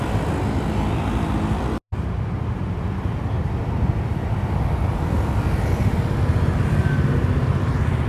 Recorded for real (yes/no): yes